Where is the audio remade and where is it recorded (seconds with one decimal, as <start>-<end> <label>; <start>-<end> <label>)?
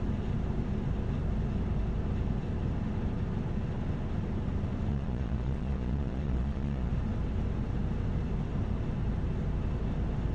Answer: 0.0-4.9 recorded; 4.9-6.9 remade; 6.9-10.3 recorded